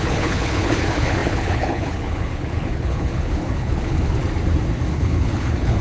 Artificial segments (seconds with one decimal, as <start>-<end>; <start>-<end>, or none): 0.0-4.2; 4.9-5.8